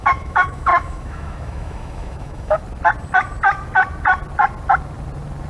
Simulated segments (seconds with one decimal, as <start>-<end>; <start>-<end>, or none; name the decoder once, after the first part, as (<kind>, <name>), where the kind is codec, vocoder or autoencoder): 0.0-2.6 (autoencoder, DAC-VAE)

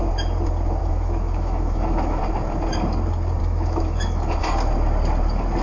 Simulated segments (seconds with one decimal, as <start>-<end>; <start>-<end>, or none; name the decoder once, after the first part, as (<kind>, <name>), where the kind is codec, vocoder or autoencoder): 0.8-2.2 (autoencoder, DAC-VAE); 3.4-4.4

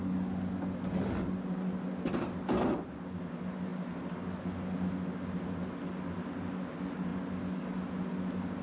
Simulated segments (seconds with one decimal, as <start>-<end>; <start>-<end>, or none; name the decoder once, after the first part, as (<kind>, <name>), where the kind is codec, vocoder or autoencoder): none

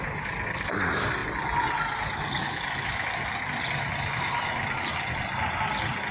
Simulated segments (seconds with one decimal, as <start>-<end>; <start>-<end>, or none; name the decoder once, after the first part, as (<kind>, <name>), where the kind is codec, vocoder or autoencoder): none